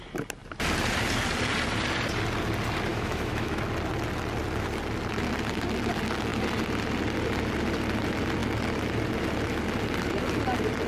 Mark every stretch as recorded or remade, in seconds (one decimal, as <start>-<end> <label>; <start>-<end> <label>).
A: 0.0-2.9 recorded; 2.9-3.6 remade; 3.6-10.9 recorded